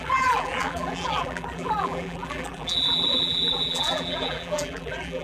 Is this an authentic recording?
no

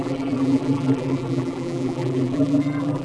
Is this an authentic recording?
no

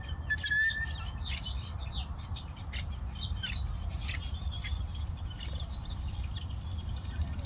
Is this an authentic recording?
no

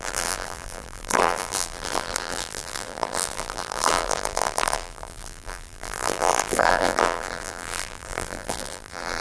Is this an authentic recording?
no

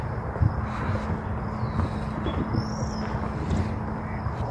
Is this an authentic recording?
yes